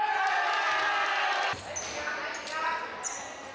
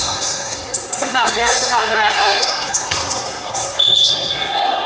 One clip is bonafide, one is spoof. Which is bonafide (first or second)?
first